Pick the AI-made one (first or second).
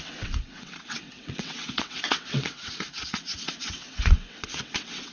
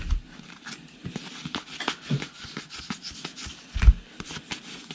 first